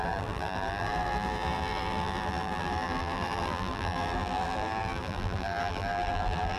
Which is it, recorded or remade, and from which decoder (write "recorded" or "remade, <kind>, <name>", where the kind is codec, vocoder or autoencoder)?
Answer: remade, vocoder, BigVGAN v2